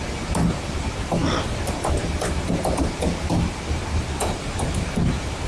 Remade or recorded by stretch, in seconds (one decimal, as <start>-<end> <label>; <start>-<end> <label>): 0.0-4.2 recorded; 4.2-4.9 remade; 4.9-5.5 recorded